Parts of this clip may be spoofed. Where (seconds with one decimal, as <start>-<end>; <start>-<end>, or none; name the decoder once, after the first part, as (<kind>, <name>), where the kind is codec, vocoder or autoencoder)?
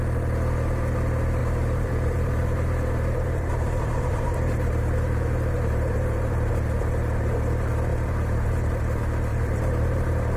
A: 1.4-6.5 (vocoder, BigVGAN v2); 7.9-8.8; 9.3-10.4